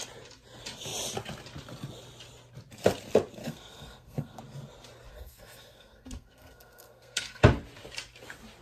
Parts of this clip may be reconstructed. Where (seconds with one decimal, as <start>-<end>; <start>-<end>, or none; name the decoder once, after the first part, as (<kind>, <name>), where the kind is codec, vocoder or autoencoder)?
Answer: 3.4-4.4 (codec, SNAC); 5.1-7.4